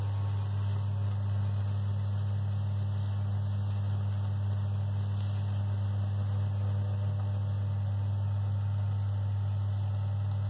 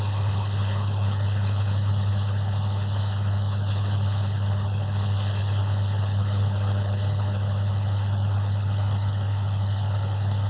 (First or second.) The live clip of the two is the first